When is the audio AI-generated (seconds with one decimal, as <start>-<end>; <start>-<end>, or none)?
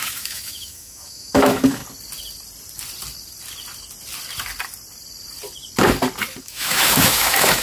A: 0.0-1.8; 6.4-7.6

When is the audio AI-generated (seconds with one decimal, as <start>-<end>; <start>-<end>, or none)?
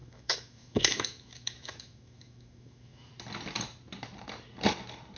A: 0.0-3.1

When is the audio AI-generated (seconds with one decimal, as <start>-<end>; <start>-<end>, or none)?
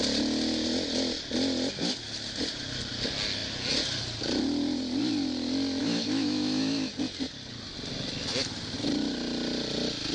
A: 5.8-6.9